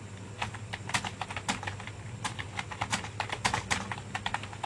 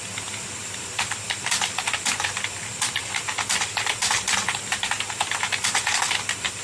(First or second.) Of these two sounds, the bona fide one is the first